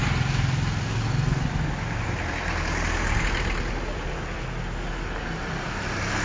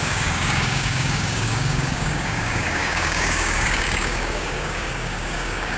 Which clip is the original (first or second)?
first